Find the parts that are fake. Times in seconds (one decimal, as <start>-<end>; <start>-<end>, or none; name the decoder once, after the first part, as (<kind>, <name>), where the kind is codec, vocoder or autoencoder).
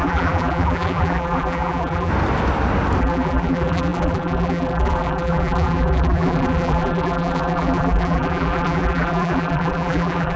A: 0.0-2.1 (vocoder, BigVGAN v2); 3.0-10.4